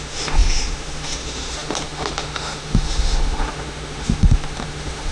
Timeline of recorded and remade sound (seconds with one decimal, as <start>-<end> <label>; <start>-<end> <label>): 0.0-5.1 remade